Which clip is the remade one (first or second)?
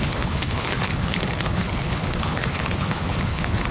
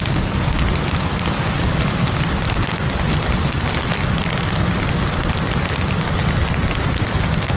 first